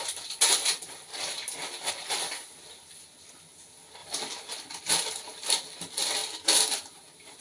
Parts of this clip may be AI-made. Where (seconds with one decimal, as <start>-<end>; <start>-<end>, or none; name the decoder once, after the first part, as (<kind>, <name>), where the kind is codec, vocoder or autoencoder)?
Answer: none